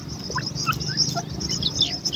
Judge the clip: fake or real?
real